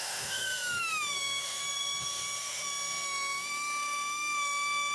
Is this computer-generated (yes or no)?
yes